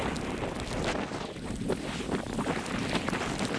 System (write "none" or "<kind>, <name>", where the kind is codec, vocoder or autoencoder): none